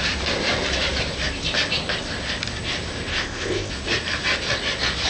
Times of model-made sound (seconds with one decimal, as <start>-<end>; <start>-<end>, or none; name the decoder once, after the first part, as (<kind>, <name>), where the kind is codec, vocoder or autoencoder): 3.1-3.7 (codec, ZipCodec)